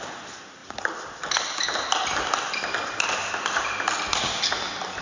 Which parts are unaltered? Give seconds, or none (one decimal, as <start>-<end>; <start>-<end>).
0.0-5.0

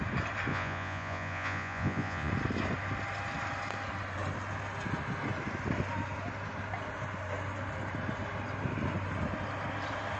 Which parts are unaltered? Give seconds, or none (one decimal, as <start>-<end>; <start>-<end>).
0.0-0.5; 2.3-10.2

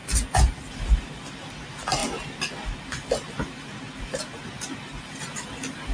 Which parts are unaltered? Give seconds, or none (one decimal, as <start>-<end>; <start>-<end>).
0.0-5.9

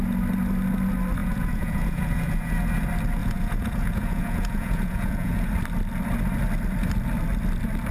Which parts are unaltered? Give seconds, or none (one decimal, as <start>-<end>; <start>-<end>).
0.0-1.2; 2.8-3.2; 5.5-7.9

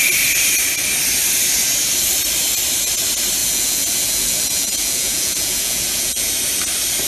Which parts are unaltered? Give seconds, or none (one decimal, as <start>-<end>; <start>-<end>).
0.0-3.4; 6.3-7.1

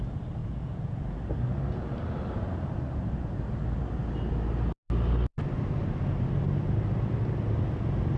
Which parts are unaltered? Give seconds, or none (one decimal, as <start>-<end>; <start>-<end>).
0.0-0.4; 1.0-8.2

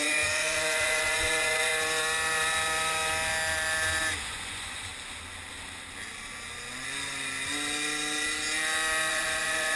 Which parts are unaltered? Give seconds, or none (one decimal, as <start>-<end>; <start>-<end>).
1.7-4.2; 4.9-9.1